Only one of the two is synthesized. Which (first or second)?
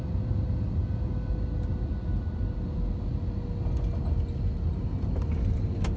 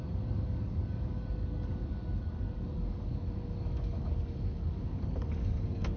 second